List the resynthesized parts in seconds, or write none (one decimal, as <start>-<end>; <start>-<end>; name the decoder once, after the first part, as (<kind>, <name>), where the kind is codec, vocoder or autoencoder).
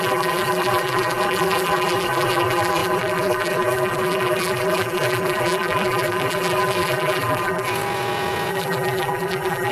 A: 0.0-7.7 (vocoder, BigVGAN v2); 8.5-9.7